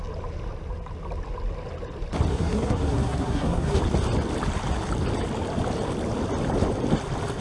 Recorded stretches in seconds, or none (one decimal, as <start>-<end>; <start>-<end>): 0.0-2.3; 3.8-7.4